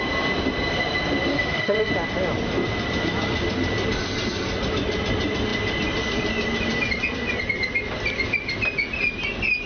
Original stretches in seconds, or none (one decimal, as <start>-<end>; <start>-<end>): 0.0-1.3; 1.9-9.7